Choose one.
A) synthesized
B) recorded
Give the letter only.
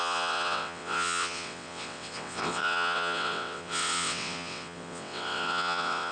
A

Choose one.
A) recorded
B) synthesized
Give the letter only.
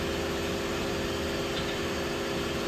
A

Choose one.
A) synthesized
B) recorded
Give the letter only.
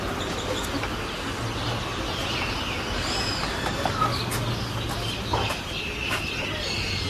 B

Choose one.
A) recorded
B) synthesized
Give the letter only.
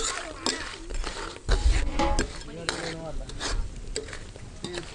A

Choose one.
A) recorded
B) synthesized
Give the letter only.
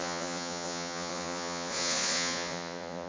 B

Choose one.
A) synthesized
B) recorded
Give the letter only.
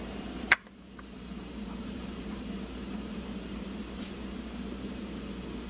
A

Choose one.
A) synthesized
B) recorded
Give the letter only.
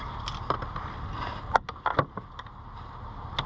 B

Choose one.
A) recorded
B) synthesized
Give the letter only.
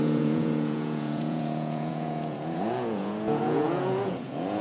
B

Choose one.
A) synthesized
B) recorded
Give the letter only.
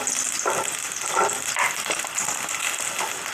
B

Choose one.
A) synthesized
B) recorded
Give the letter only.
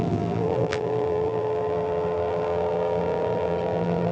A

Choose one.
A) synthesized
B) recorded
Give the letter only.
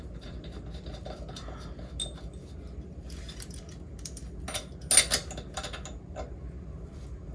B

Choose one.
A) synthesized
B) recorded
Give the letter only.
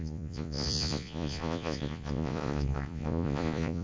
A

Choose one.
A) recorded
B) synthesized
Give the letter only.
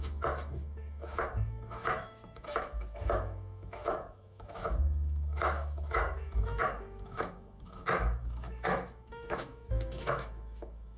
B